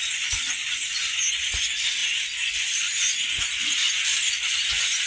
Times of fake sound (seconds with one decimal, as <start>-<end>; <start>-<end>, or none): none